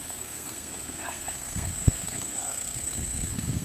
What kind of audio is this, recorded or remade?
remade